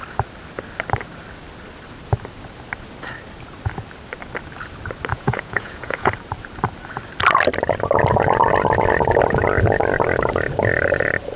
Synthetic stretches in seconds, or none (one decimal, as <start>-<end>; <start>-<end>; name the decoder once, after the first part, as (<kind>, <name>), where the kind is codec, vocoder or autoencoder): 5.1-6.1 (vocoder, Vocos)